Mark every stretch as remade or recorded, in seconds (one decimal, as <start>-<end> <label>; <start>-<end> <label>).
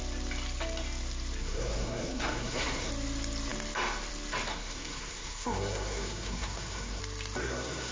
0.0-1.4 recorded; 1.4-2.9 remade; 2.9-4.5 recorded; 4.5-7.0 remade; 7.0-7.4 recorded; 7.4-7.9 remade